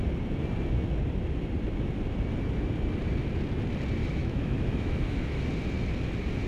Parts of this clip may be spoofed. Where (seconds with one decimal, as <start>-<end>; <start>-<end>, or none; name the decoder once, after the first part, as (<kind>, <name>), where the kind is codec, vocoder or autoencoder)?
4.0-5.4 (autoencoder, DAC-VAE)